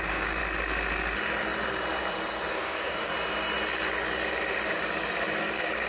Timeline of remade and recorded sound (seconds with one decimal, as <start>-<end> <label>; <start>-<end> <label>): 0.0-0.4 remade; 0.4-2.5 recorded; 2.5-3.1 remade; 3.1-5.4 recorded; 5.4-5.9 remade